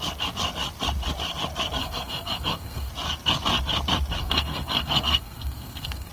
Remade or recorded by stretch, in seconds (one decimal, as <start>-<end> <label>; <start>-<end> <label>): 0.0-1.8 recorded; 1.8-2.9 remade; 2.9-4.2 recorded; 4.2-6.1 remade